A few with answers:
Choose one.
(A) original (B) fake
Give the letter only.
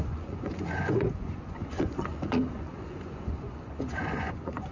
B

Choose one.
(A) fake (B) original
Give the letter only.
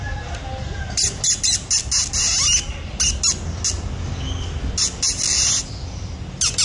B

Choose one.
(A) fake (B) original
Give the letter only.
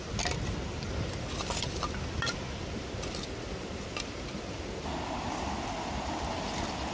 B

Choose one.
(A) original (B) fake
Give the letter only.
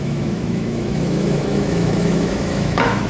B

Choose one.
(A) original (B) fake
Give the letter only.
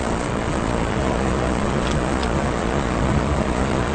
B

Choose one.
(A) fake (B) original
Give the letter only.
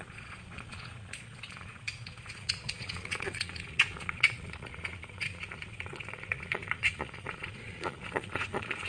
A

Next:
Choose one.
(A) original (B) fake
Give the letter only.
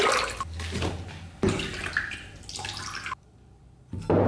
A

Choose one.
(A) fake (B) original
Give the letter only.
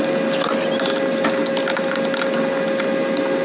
B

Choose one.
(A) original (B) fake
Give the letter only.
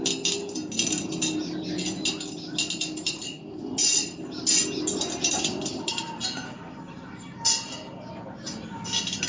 A